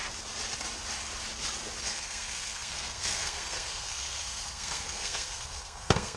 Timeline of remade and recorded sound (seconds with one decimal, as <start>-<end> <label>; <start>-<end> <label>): 0.0-1.8 recorded; 1.8-6.2 remade